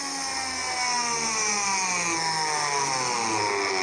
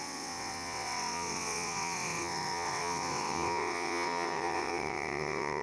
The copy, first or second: second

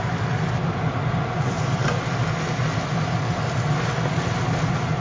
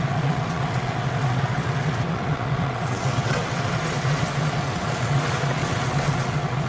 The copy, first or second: second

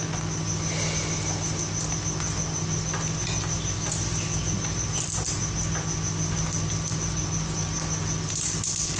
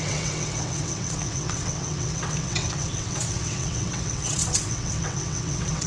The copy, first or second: second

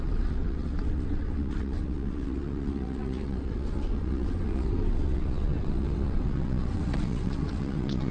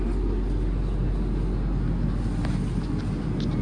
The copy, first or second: first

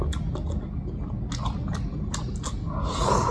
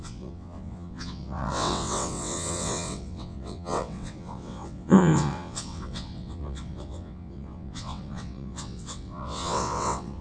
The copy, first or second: second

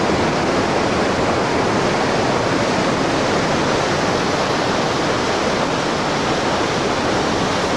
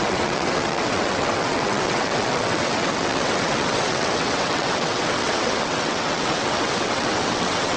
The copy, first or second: second